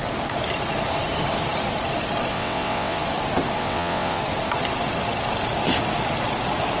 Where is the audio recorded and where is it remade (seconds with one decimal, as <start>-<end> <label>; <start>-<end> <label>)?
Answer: 0.0-2.3 recorded; 2.3-3.0 remade; 3.0-3.6 recorded; 3.6-4.2 remade; 4.2-6.8 recorded